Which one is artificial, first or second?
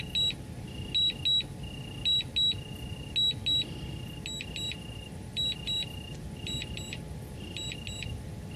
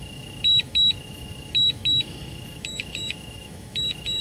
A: second